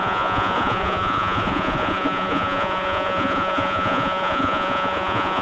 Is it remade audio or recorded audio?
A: remade